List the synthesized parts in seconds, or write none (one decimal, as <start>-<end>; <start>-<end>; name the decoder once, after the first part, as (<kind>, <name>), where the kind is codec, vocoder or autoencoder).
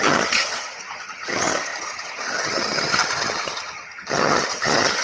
0.0-5.0 (vocoder, HiFi-GAN)